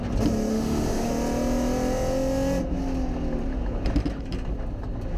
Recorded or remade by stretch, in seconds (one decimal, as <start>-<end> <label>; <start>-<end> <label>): 0.0-0.5 recorded; 0.5-1.1 remade; 1.1-5.2 recorded